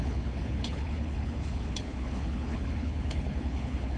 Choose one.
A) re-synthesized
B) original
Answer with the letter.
A